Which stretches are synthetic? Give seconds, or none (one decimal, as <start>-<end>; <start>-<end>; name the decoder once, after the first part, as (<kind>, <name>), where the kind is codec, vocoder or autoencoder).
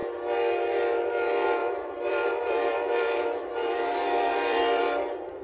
1.6-4.8 (vocoder, BigVGAN v2)